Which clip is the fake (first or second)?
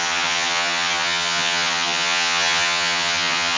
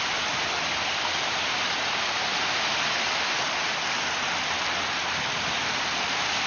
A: first